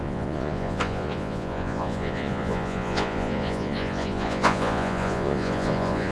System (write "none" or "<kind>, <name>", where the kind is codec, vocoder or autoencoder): vocoder, Vocos